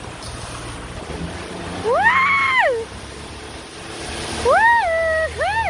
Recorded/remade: recorded